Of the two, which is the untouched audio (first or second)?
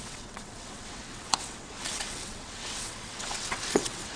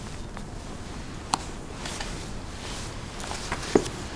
second